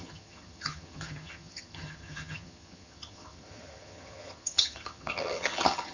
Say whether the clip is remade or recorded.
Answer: remade